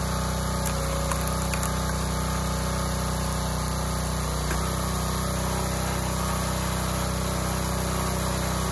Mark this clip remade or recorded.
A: recorded